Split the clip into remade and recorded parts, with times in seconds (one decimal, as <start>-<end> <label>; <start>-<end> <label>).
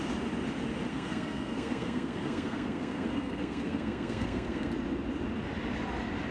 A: 0.0-0.9 recorded; 0.9-4.7 remade; 4.7-6.3 recorded